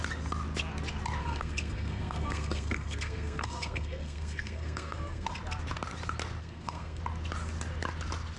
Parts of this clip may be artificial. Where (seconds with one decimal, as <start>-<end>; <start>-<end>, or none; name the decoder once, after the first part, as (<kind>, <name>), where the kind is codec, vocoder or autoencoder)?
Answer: 1.2-5.3 (codec, SNAC); 6.4-7.0